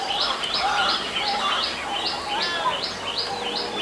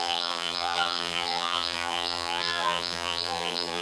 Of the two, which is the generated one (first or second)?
second